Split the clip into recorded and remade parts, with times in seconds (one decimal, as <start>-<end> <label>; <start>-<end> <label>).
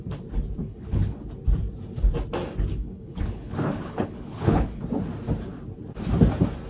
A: 0.0-0.6 recorded; 0.6-1.2 remade; 1.2-2.7 recorded; 2.7-4.8 remade; 4.8-6.7 recorded